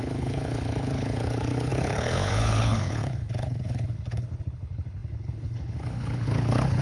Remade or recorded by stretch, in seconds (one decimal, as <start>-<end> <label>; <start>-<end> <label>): 0.0-6.8 remade